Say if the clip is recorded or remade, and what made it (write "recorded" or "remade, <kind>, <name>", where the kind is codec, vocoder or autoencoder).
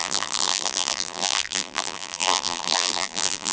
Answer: remade, vocoder, BigVGAN v2